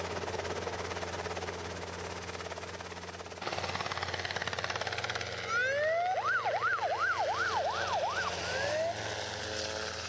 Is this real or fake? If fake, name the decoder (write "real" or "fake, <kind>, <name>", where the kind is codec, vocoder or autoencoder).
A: real